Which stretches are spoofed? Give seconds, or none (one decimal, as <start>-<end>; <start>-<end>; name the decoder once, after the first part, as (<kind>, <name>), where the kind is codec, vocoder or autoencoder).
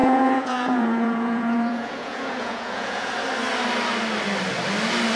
0.0-3.1 (vocoder, Vocos)